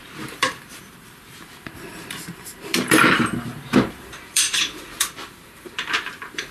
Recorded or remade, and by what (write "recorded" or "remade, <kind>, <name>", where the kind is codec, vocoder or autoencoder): remade, vocoder, BigVGAN v2